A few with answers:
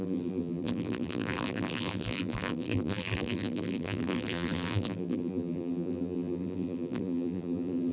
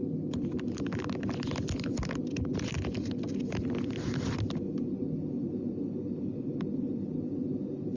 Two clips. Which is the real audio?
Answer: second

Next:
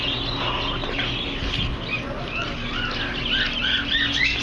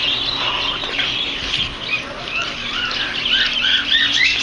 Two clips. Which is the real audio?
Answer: first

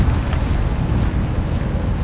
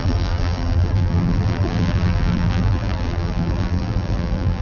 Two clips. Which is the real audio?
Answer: first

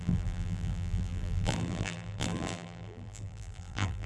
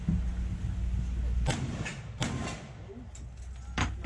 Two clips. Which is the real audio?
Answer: second